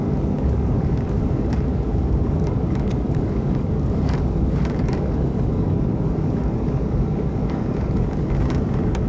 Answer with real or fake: fake